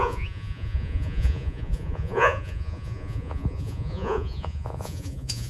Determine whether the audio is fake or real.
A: fake